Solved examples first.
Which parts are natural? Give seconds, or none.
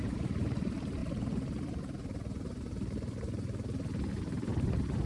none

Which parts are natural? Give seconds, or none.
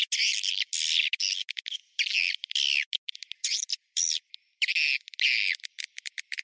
0.0-3.7; 4.7-6.4